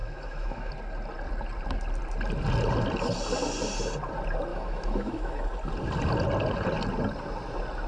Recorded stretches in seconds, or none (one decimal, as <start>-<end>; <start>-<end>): 0.7-4.5; 5.4-7.9